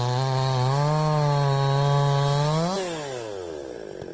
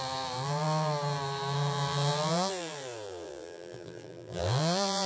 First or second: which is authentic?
first